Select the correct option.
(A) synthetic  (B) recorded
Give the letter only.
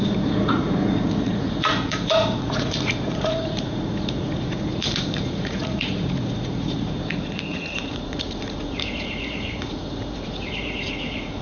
A